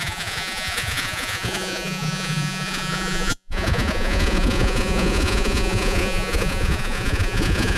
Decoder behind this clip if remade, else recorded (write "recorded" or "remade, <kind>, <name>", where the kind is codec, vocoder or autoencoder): remade, vocoder, Vocos